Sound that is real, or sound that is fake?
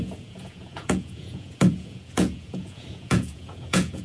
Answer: fake